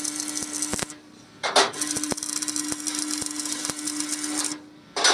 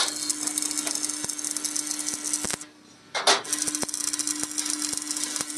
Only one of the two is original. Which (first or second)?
second